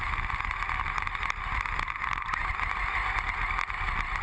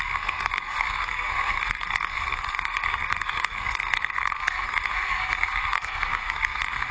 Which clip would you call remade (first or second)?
second